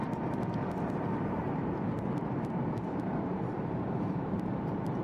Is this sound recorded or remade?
remade